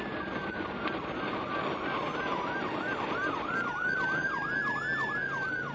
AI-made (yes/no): no